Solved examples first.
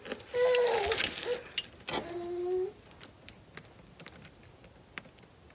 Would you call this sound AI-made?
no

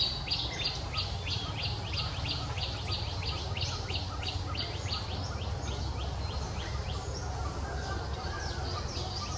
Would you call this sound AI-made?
no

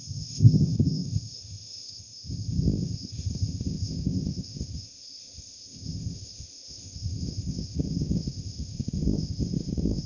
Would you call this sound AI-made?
yes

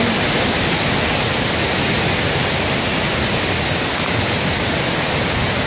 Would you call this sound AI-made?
no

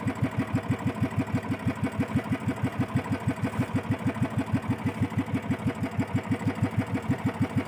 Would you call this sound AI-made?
no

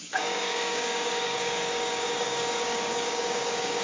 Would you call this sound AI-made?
yes